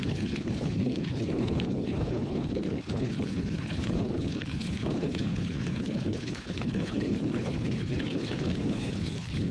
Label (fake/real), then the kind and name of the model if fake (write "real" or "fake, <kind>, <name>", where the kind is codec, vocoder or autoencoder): fake, codec, HILCodec